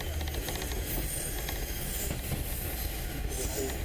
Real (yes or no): yes